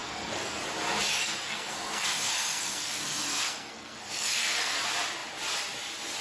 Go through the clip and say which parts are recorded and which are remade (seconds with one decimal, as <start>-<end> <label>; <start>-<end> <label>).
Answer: 0.0-0.6 remade; 0.6-1.1 recorded; 1.1-4.8 remade; 4.8-6.2 recorded